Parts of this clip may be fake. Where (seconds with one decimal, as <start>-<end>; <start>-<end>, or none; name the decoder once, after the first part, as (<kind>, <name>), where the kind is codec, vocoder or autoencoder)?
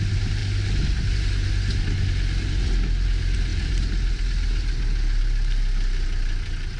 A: none